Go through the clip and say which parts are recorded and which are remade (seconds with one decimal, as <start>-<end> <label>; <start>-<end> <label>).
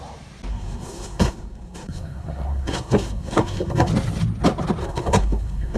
0.0-0.5 recorded; 0.5-3.9 remade; 3.9-4.8 recorded; 4.8-5.8 remade